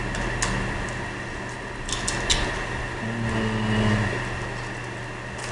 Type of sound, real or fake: real